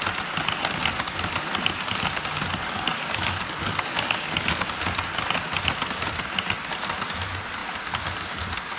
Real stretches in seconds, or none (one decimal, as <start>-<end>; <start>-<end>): 0.0-2.6; 4.6-8.8